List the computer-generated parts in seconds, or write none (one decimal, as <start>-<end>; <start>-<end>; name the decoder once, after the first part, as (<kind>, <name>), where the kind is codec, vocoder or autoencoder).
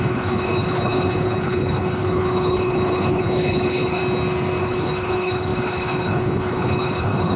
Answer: 0.0-4.0 (codec, HILCodec); 4.6-7.4